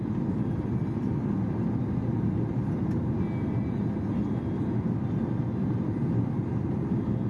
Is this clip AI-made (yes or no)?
no